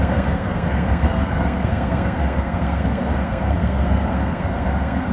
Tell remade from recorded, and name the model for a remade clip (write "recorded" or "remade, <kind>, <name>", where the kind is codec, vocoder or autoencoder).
remade, codec, SNAC